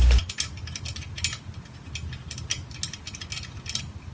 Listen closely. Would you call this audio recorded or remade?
recorded